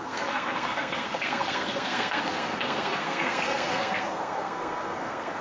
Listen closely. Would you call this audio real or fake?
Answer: fake